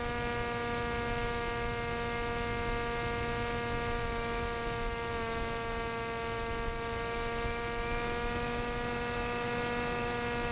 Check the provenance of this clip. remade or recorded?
recorded